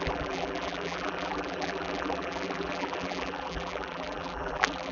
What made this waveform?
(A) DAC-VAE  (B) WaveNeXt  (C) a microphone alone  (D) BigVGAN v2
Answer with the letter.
D